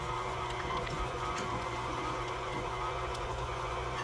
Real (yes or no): no